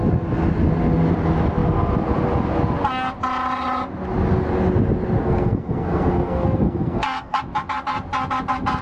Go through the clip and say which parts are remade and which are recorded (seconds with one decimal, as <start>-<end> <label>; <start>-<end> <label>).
0.0-5.2 recorded; 5.2-7.4 remade; 7.4-8.8 recorded